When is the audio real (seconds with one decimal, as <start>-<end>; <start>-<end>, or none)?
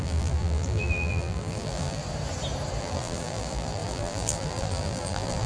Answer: 2.0-2.8